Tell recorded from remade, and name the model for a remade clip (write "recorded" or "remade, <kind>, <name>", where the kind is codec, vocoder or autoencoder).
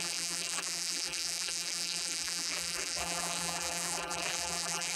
remade, vocoder, BigVGAN v2